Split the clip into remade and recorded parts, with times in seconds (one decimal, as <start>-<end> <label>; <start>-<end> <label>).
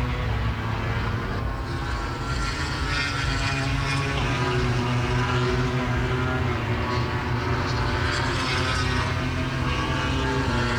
0.0-10.8 recorded